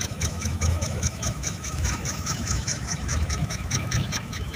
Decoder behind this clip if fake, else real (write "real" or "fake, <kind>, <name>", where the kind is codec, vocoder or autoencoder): fake, autoencoder, DAC-VAE